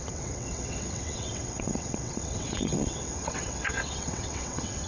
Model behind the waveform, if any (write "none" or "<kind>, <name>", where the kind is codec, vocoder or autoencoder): vocoder, WaveNeXt